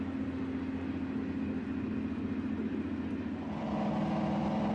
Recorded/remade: recorded